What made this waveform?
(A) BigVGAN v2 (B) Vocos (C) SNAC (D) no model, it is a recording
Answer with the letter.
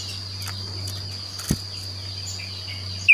D